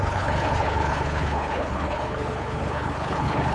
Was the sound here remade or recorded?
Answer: remade